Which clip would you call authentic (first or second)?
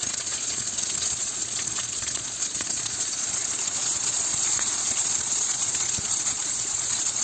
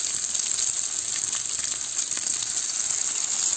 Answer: second